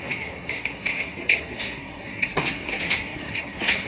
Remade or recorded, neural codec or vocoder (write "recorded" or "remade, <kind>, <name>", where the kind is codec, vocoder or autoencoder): remade, codec, SNAC